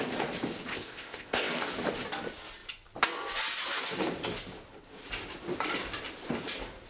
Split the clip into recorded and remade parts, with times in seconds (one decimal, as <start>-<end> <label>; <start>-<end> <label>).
0.0-0.7 recorded; 0.7-1.5 remade; 1.5-6.9 recorded